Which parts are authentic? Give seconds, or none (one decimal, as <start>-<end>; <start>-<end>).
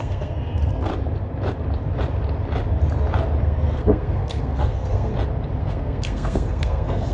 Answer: 0.9-3.4; 5.1-5.6